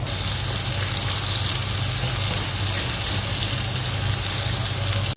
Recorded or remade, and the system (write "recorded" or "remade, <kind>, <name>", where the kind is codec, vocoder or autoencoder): recorded